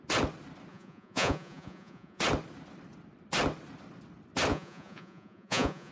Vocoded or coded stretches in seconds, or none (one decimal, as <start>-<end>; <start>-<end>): 0.7-2.2; 4.5-5.9